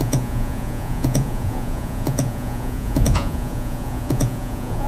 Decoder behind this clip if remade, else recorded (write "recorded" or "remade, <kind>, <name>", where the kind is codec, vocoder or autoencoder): remade, vocoder, Vocos